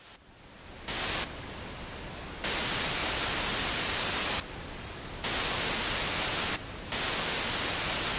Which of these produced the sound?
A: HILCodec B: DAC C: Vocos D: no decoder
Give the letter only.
D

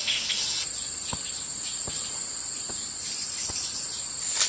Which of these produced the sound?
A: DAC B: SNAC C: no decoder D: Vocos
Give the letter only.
C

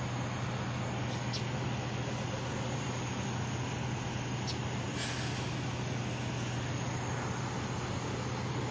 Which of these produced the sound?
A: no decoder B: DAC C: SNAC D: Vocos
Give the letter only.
A